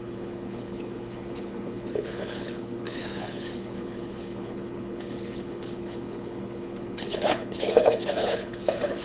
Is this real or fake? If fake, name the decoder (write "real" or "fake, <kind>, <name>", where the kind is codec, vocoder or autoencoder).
fake, codec, HILCodec